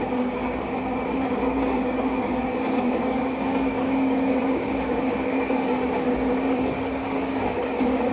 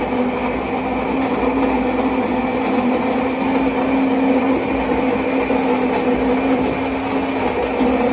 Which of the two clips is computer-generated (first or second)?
first